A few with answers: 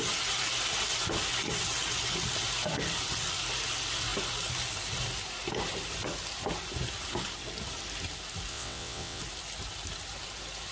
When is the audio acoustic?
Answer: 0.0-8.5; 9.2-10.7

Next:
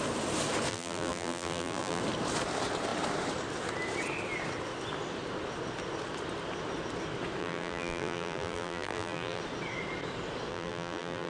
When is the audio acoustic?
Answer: 0.0-0.7; 2.0-7.4; 9.4-10.5

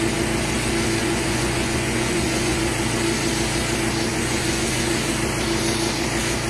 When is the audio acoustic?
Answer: 0.0-1.0; 2.6-4.1; 4.9-6.5

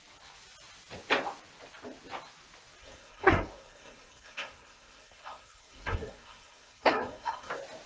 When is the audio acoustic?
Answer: 0.0-2.8; 7.5-7.9